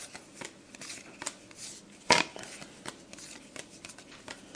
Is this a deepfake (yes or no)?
no